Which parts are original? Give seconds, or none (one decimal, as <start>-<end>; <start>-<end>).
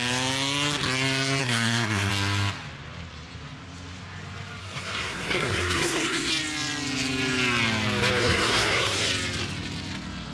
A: 0.0-1.4; 2.1-4.6; 6.3-8.2; 9.1-10.3